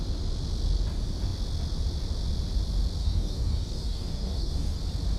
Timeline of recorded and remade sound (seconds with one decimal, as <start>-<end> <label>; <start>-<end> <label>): 0.0-3.0 recorded; 3.0-4.8 remade; 4.8-5.2 recorded